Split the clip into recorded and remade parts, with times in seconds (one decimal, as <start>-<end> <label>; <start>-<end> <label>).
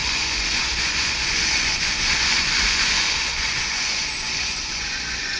0.0-5.4 remade